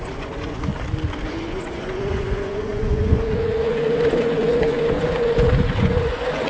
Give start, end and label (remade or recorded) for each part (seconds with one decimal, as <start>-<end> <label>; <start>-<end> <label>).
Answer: 0.0-0.7 remade; 0.7-1.3 recorded; 1.3-6.5 remade